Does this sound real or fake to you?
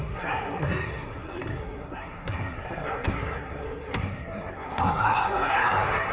fake